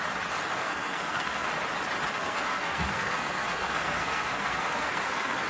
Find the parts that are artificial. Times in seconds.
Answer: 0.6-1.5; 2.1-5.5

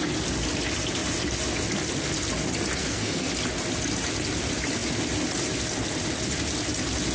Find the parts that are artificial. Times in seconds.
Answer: 2.8-3.3

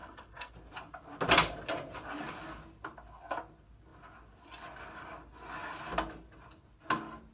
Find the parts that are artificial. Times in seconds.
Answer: 0.0-0.5

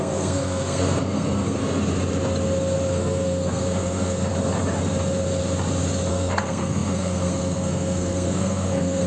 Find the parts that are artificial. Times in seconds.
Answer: 0.0-1.6; 2.9-4.3; 6.1-9.1

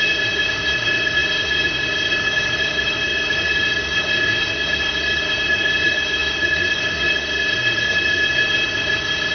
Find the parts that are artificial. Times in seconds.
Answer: 0.0-9.3

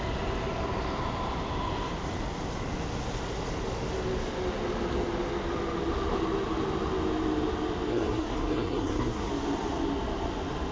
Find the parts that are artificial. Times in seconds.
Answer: 7.9-9.3